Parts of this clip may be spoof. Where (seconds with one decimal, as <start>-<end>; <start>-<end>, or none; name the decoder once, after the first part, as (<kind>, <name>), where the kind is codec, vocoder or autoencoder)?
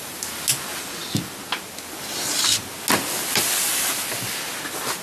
none